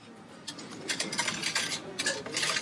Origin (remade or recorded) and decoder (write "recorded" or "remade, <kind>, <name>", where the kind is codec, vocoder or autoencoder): recorded